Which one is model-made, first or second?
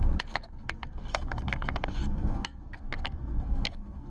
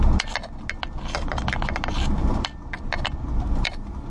first